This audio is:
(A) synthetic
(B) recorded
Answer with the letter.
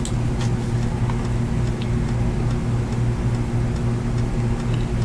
B